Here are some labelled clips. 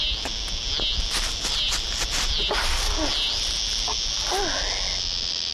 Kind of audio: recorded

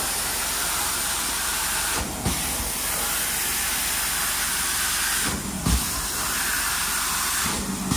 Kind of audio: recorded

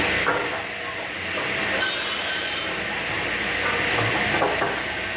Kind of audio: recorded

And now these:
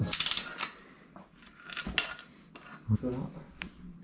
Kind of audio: recorded